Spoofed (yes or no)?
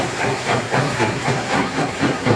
yes